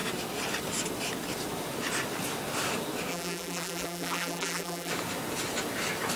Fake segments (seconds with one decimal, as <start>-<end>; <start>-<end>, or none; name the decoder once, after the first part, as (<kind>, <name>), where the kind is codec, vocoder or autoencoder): 3.1-4.9 (vocoder, BigVGAN v2)